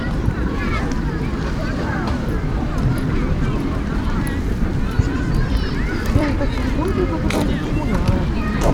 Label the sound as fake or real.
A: fake